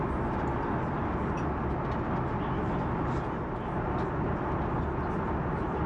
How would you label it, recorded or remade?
recorded